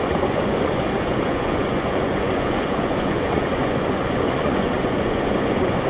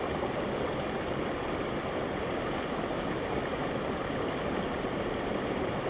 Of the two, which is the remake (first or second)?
first